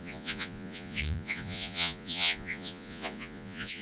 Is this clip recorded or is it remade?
remade